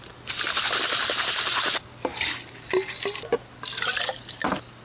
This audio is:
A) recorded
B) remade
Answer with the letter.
A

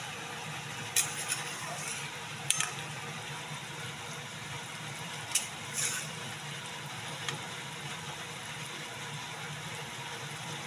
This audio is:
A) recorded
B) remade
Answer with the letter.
B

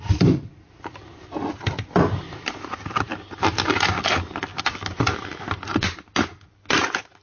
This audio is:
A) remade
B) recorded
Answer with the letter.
B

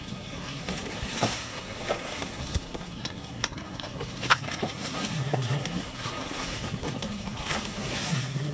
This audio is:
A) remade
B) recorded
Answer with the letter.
A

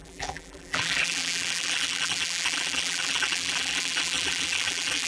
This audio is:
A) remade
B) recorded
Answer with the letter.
A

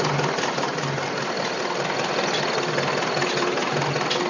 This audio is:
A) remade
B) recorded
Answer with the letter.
B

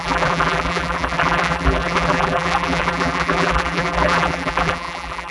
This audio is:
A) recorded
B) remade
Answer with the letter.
B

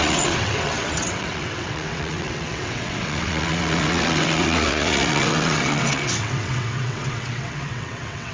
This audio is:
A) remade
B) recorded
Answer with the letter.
A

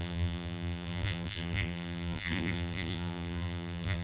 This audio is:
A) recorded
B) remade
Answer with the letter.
B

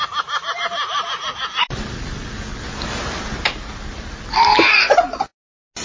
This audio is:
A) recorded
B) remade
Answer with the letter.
A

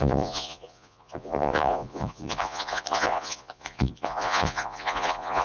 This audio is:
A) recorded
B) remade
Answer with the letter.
B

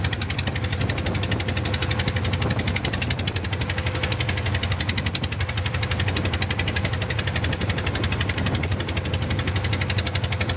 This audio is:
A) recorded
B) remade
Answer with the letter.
A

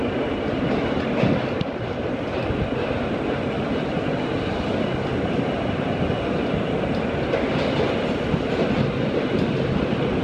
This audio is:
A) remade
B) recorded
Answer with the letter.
B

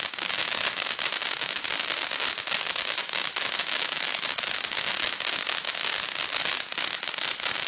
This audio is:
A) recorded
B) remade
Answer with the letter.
B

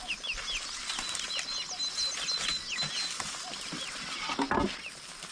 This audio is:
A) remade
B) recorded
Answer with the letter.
B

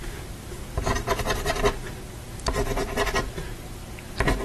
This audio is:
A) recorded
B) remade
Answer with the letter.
B